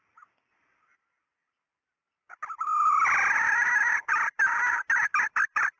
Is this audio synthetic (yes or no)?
no